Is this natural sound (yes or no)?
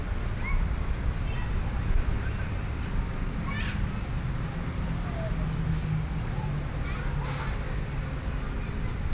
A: yes